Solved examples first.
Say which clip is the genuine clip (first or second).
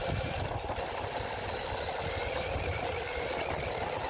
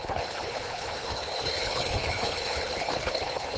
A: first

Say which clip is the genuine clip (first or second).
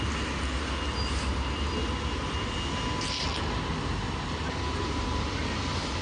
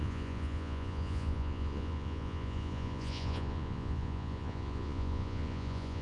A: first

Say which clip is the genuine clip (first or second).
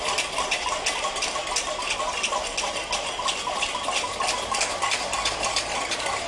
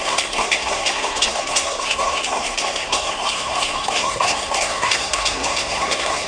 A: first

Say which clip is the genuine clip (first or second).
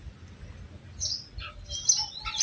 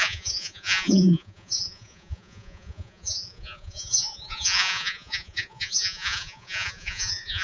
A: first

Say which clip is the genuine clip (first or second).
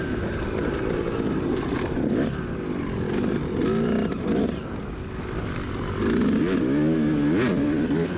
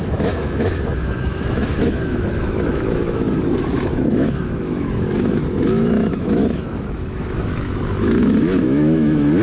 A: first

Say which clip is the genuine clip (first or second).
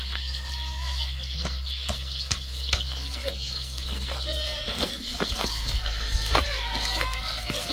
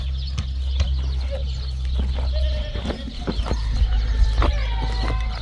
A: second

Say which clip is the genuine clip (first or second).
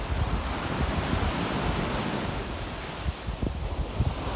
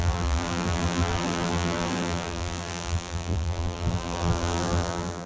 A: first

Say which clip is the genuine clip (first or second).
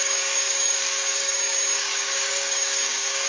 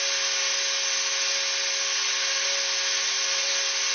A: second